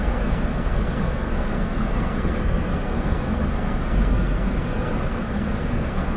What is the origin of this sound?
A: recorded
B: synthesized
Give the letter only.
B